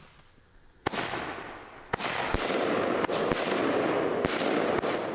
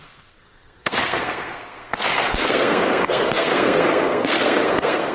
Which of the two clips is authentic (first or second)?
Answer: first